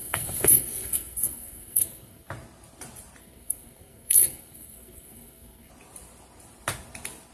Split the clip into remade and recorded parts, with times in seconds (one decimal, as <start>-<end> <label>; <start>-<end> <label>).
0.0-2.3 remade; 2.3-3.2 recorded; 3.2-5.7 remade; 5.7-7.3 recorded